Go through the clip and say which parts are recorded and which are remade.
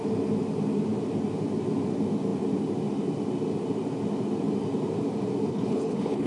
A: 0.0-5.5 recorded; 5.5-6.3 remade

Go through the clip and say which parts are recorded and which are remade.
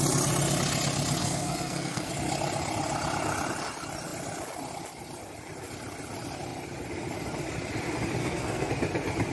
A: 0.0-1.2 recorded; 1.2-2.1 remade; 2.1-8.2 recorded; 8.2-8.7 remade; 8.7-9.3 recorded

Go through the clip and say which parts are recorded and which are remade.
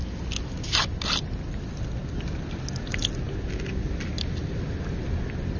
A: 0.0-5.6 recorded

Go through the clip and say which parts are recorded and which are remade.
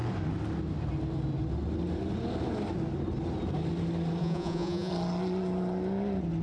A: 0.0-4.2 recorded; 4.2-4.9 remade; 4.9-6.4 recorded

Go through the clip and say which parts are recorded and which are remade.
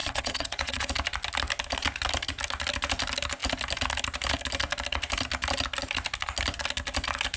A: 0.0-0.9 remade; 0.9-7.4 recorded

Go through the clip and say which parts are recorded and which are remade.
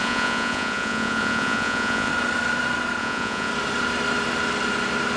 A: 0.0-2.1 remade; 2.1-3.0 recorded; 3.0-3.5 remade; 3.5-5.2 recorded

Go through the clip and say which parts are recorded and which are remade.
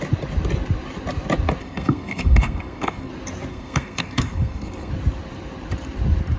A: 0.0-1.6 recorded; 1.6-3.1 remade; 3.1-3.5 recorded; 3.5-4.9 remade; 4.9-6.4 recorded